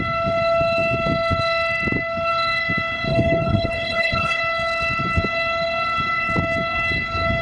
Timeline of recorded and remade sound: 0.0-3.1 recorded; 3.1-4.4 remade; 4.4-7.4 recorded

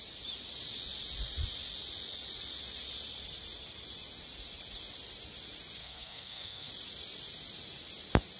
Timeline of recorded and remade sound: 0.0-5.8 recorded; 5.8-6.7 remade; 6.7-8.4 recorded